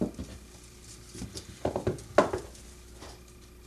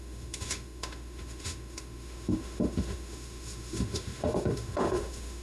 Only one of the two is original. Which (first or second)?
first